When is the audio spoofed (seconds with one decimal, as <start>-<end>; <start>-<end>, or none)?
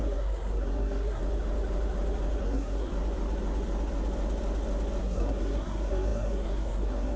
0.0-1.2; 2.4-2.9; 5.0-7.2